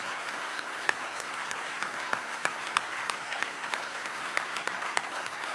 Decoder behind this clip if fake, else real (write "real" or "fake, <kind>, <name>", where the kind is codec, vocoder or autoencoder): fake, codec, SNAC